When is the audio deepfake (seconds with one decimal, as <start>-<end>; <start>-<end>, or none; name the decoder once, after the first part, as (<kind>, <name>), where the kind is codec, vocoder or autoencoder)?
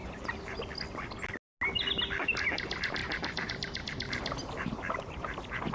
0.0-0.6 (vocoder, BigVGAN v2); 3.0-5.7